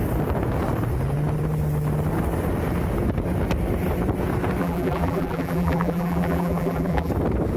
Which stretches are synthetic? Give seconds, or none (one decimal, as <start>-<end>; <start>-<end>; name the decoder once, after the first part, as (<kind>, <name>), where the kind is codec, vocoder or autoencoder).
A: 4.6-7.1 (vocoder, BigVGAN v2)